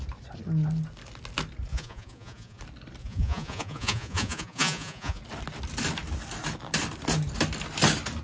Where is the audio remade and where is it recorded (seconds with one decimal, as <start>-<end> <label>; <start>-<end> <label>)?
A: 0.0-1.7 recorded; 1.7-2.6 remade; 2.6-3.0 recorded; 3.0-5.2 remade; 5.2-8.2 recorded